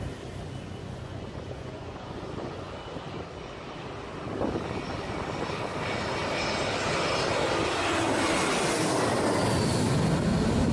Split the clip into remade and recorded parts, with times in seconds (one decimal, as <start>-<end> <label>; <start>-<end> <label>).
0.0-0.8 recorded; 0.8-2.7 remade; 2.7-10.7 recorded